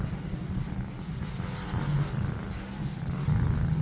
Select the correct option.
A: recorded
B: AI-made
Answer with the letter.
A